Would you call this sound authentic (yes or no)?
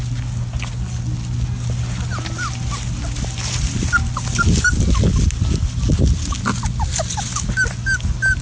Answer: yes